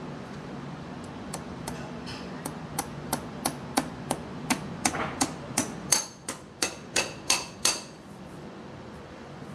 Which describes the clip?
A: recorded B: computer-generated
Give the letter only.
B